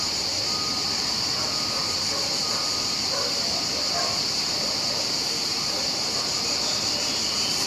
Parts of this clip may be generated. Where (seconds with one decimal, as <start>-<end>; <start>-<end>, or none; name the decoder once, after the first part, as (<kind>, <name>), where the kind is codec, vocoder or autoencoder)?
none

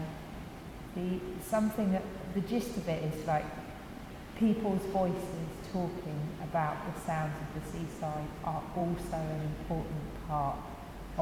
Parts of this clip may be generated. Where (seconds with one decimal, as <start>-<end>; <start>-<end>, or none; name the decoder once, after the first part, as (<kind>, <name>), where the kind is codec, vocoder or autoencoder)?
none

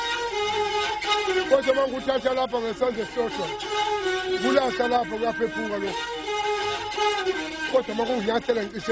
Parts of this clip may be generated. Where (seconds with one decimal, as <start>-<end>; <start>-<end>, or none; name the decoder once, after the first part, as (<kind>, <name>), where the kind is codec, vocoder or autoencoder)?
none

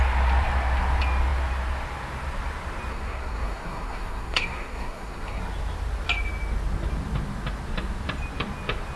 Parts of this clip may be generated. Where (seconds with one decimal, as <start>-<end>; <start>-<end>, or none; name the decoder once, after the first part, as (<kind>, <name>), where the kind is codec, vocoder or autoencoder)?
2.9-5.4 (codec, SNAC)

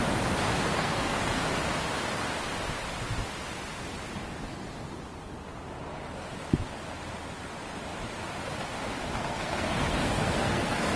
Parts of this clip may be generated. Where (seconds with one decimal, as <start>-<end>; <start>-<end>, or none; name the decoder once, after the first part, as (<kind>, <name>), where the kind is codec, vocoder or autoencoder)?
0.7-1.4 (codec, SNAC); 9.2-11.0

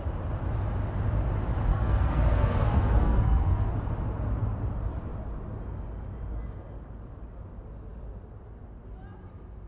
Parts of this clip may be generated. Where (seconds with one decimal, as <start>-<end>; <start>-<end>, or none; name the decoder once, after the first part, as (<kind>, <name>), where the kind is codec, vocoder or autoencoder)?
1.7-3.7 (codec, SNAC)

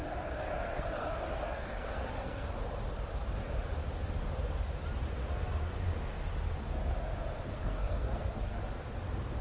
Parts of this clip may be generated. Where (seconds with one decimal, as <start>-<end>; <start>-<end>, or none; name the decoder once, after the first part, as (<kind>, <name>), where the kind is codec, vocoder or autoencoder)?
0.4-2.5 (codec, SNAC); 7.5-8.6